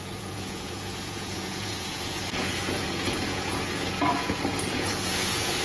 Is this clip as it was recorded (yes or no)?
no